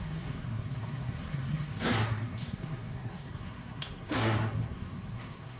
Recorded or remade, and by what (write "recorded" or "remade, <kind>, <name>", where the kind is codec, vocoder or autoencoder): remade, codec, SNAC